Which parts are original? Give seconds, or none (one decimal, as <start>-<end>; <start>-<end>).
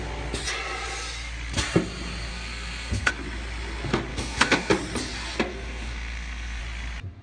0.0-2.3; 3.1-4.1; 4.7-5.5; 6.6-7.2